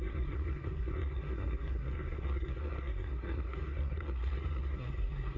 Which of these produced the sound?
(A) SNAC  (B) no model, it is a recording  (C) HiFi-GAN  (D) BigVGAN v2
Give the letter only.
A